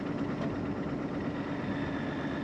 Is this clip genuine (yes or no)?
yes